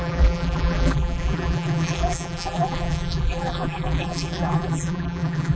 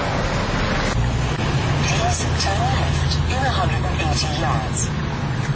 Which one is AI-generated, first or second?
first